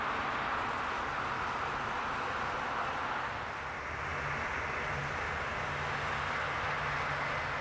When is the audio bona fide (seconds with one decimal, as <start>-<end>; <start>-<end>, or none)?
0.0-7.6